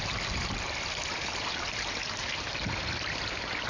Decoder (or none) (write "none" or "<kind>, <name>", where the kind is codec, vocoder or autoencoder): none